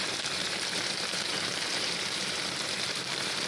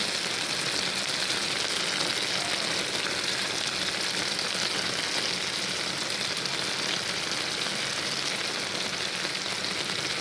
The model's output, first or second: first